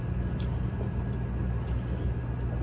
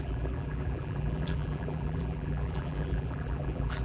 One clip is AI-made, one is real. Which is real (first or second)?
first